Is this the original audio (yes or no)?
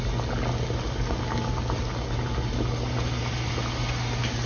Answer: yes